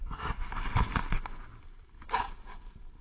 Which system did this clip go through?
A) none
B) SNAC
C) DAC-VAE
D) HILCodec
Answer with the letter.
A